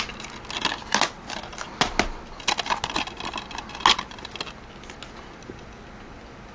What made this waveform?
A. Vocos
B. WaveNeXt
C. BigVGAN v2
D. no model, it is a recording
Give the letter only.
D